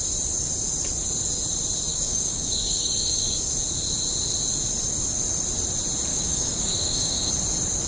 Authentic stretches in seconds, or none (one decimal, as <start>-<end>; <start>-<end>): 0.0-1.9; 3.5-6.1; 7.3-7.9